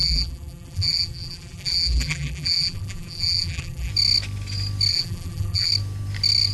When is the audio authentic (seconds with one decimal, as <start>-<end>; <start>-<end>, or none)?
3.9-4.9; 5.7-6.5